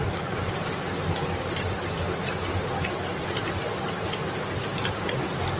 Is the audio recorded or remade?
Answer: recorded